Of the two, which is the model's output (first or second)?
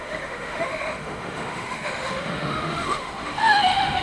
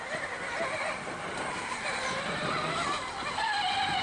first